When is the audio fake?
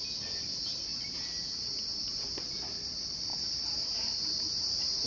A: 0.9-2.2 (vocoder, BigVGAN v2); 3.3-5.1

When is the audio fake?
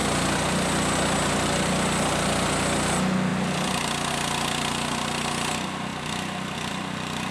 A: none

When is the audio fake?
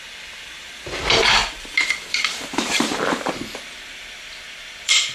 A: 0.0-1.4 (vocoder, BigVGAN v2); 2.1-5.1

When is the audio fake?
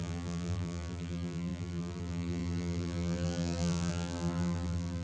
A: 0.0-5.0 (vocoder, BigVGAN v2)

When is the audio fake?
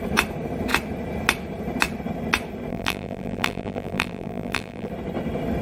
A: 2.7-4.9 (vocoder, BigVGAN v2)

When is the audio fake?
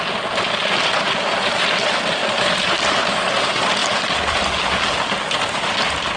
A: none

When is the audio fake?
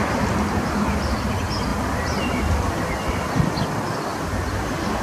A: 1.7-3.4 (vocoder, BigVGAN v2); 4.1-5.0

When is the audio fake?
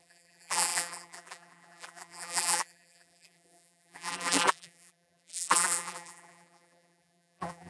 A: 0.0-7.7 (vocoder, BigVGAN v2)